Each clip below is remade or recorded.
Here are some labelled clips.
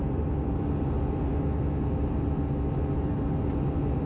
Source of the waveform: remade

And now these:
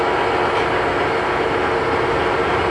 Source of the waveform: recorded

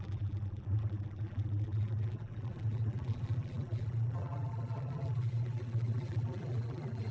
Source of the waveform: remade